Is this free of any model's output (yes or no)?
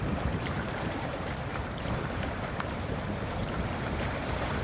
no